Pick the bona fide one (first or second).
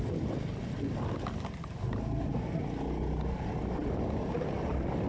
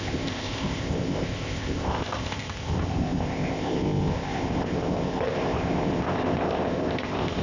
first